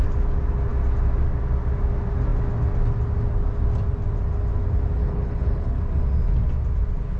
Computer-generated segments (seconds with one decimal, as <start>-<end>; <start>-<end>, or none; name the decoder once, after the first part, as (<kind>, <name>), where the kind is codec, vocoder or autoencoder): 5.0-5.8 (codec, HILCodec)